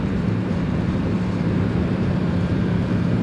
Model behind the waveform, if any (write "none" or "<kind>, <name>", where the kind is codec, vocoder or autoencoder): vocoder, BigVGAN v2